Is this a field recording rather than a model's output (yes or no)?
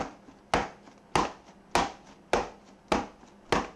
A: yes